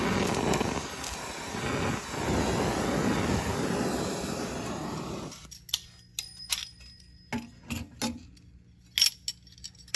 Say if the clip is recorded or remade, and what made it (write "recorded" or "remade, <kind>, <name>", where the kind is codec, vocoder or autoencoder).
recorded